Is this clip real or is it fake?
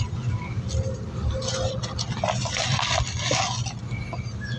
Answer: real